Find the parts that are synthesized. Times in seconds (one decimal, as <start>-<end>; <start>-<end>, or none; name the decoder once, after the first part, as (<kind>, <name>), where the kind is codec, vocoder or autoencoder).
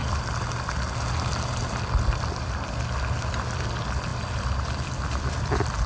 none